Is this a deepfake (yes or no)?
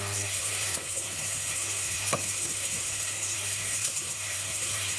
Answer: yes